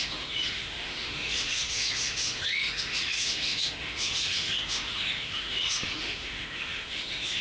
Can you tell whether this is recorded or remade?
remade